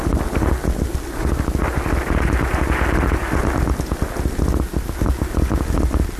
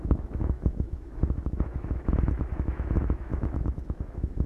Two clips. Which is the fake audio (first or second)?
second